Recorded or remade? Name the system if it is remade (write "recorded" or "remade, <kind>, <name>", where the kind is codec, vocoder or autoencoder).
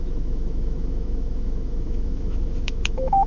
remade, autoencoder, DAC-VAE